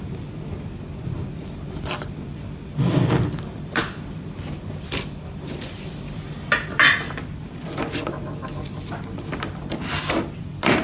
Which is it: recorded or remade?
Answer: remade